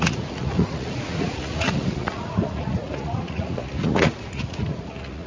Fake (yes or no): yes